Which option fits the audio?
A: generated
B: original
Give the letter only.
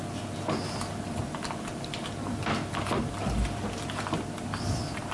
B